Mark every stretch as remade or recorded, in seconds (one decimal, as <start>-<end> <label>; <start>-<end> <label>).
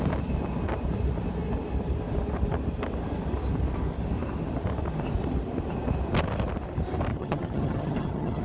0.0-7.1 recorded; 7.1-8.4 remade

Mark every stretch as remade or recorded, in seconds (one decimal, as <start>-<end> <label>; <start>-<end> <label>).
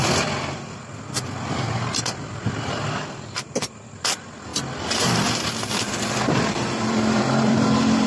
0.0-0.6 recorded; 0.6-4.5 remade; 4.5-6.4 recorded; 6.4-8.1 remade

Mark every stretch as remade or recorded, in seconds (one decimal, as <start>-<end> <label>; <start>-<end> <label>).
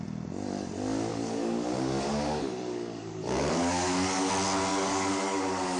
0.0-1.1 recorded; 1.1-4.3 remade; 4.3-4.7 recorded; 4.7-5.8 remade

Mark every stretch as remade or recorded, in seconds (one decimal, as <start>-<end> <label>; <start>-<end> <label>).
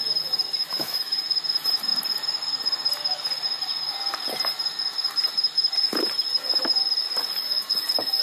0.0-0.6 recorded; 0.6-1.2 remade; 1.2-8.2 recorded